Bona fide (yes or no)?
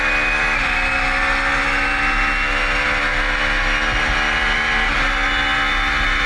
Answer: yes